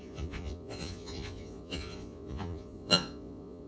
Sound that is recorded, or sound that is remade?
remade